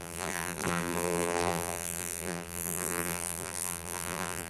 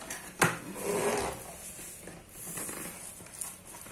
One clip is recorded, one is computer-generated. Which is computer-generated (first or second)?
first